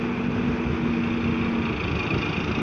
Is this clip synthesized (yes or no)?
no